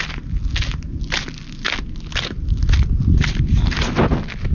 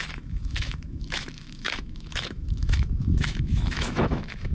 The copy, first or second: second